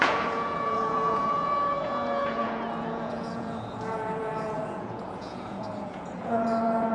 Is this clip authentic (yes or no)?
no